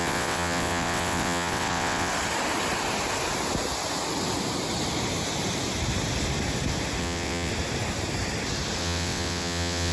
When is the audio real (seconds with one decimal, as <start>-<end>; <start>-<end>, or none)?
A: 2.1-7.0; 7.5-8.8